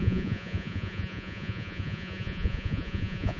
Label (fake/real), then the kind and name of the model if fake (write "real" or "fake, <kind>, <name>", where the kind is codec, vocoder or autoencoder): fake, vocoder, Vocos